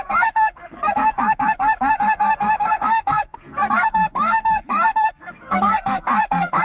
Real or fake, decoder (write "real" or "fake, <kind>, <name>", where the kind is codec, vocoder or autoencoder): fake, codec, SNAC